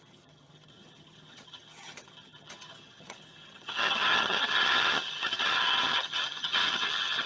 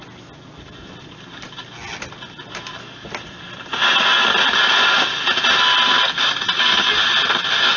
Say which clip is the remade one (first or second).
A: first